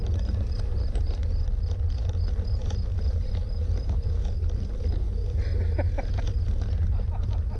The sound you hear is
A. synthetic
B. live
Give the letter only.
B